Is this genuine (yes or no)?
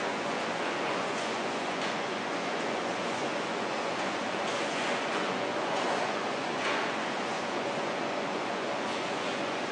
no